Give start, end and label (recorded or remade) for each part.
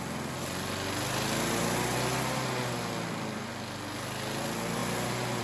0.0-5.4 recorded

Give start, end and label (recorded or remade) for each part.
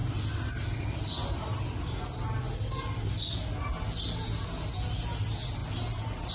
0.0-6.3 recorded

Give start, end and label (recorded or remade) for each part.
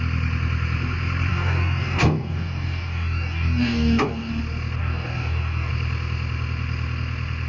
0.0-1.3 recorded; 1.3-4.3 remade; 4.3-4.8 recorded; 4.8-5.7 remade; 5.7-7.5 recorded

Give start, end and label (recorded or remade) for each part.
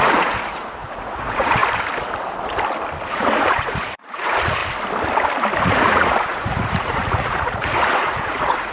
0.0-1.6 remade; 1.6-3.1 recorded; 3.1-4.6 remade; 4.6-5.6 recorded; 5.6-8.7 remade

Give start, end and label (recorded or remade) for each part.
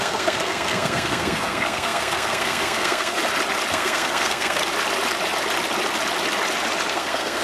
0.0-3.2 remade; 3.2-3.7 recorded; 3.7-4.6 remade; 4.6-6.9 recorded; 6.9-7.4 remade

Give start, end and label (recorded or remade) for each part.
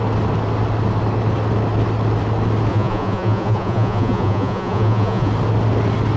0.0-2.7 recorded; 2.7-5.3 remade; 5.3-6.2 recorded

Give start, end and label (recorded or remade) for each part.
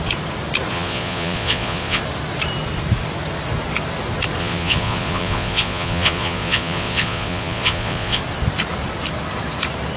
0.0-0.7 recorded; 0.7-2.0 remade; 2.0-4.4 recorded; 4.4-8.2 remade; 8.2-10.0 recorded